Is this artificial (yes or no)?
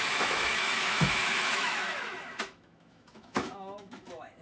yes